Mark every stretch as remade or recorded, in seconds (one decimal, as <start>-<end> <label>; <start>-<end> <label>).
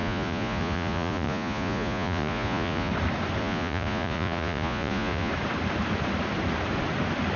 0.0-2.9 remade; 2.9-3.4 recorded; 3.4-5.3 remade; 5.3-7.4 recorded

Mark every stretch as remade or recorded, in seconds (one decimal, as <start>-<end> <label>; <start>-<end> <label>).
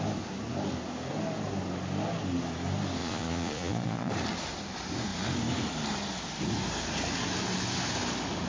0.0-3.0 recorded; 3.0-4.1 remade; 4.1-8.5 recorded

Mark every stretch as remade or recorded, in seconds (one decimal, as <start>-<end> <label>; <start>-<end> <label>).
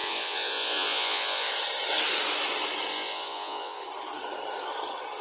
0.0-1.5 remade; 1.5-2.9 recorded; 2.9-3.8 remade; 3.8-5.2 recorded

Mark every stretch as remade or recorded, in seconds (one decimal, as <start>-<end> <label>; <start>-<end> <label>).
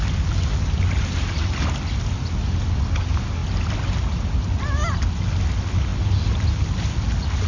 0.0-7.5 recorded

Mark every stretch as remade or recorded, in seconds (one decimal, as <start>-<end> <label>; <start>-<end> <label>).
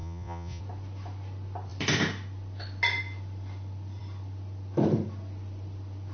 0.0-0.6 remade; 0.6-6.1 recorded